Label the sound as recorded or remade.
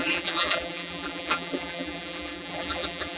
remade